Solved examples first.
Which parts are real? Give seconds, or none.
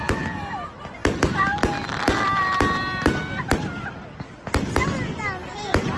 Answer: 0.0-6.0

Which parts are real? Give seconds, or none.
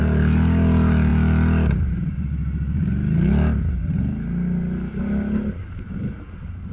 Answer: 0.0-6.7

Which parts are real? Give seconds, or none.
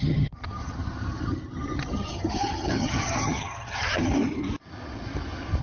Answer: 4.1-5.6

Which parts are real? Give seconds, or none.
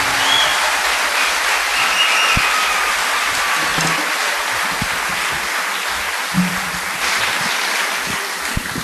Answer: 0.0-8.8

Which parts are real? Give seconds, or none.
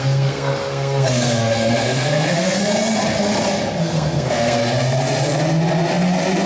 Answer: 2.6-3.8; 4.6-6.5